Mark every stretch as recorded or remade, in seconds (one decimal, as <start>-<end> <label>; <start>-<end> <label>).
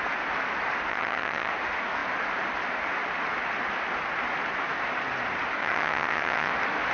0.0-0.9 recorded; 0.9-1.5 remade; 1.5-5.6 recorded; 5.6-6.5 remade; 6.5-6.9 recorded